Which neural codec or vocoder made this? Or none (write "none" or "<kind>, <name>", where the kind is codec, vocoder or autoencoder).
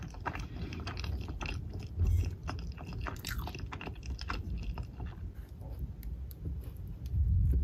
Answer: none